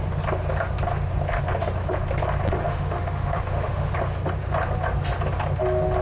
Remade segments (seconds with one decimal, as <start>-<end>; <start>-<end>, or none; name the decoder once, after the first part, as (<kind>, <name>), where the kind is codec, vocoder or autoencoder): 2.6-3.9 (autoencoder, DAC-VAE)